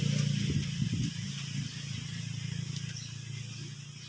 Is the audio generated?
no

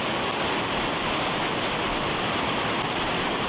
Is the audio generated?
no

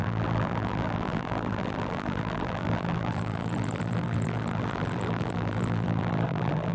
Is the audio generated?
yes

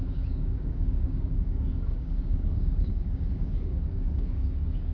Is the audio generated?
yes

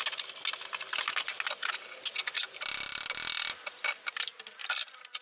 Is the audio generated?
no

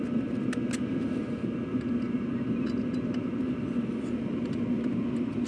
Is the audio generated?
no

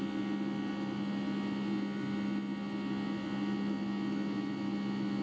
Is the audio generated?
no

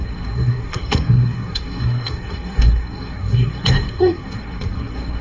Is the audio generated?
yes